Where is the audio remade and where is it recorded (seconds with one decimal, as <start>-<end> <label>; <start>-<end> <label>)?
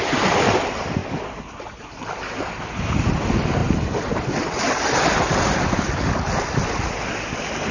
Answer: 0.0-7.7 recorded